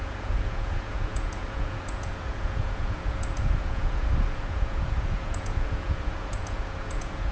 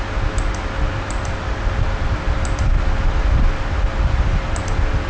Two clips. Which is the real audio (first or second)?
second